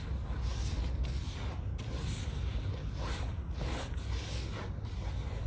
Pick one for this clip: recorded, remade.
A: recorded